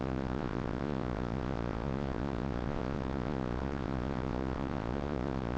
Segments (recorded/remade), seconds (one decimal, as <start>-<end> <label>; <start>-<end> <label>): 0.0-5.6 remade